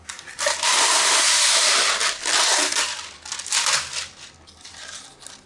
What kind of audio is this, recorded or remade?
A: recorded